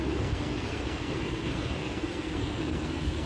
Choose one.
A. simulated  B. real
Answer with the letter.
A